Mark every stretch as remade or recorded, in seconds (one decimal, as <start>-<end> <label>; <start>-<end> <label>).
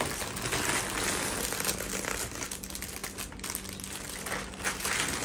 0.0-5.2 recorded